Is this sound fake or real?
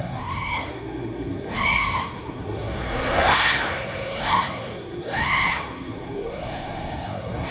fake